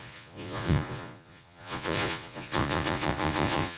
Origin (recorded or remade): remade